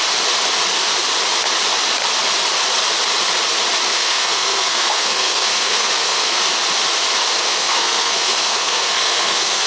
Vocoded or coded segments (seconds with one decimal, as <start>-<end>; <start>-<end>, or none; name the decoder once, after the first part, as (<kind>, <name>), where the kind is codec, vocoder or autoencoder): 3.9-6.4 (codec, SNAC); 7.3-9.7